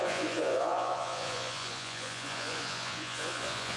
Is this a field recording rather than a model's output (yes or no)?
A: no